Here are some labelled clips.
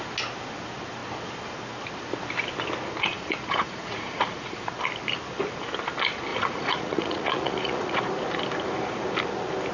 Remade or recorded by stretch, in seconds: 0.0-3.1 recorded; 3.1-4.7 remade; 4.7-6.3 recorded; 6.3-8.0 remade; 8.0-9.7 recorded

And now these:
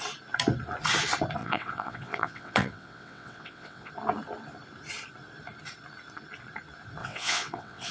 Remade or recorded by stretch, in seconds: 0.0-1.4 recorded; 1.4-3.9 remade; 3.9-7.0 recorded; 7.0-7.9 remade

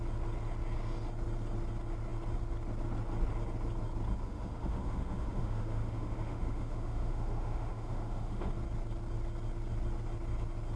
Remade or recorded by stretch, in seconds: 0.0-4.2 recorded; 4.2-8.5 remade; 8.5-10.8 recorded

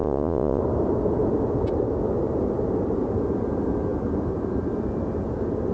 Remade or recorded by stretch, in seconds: 0.0-0.6 remade; 0.6-5.7 recorded

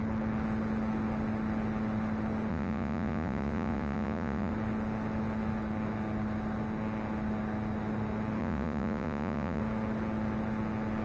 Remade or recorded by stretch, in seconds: 0.0-2.5 recorded; 2.5-4.5 remade; 4.5-8.4 recorded; 8.4-9.6 remade; 9.6-11.0 recorded

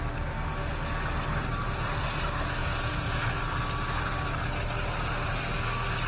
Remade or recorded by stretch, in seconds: 0.0-2.6 recorded; 2.6-3.2 remade; 3.2-6.1 recorded

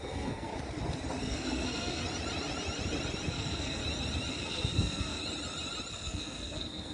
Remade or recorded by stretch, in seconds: 0.0-0.5 remade; 0.5-1.2 recorded; 1.2-2.0 remade; 2.0-3.3 recorded; 3.3-3.8 remade; 3.8-4.3 recorded; 4.3-5.2 remade; 5.2-5.9 recorded; 5.9-6.9 remade

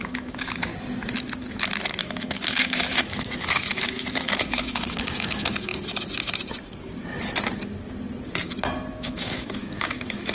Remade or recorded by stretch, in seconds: 0.0-0.7 remade; 0.7-2.0 recorded; 2.0-5.7 remade; 5.7-8.9 recorded; 8.9-10.3 remade